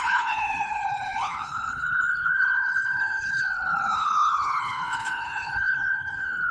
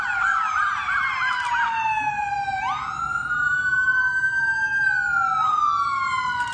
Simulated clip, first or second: first